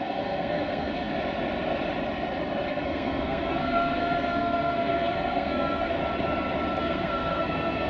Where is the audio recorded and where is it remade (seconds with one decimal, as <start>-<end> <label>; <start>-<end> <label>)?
0.0-1.1 remade; 1.1-2.7 recorded; 2.7-6.0 remade; 6.0-6.8 recorded; 6.8-7.9 remade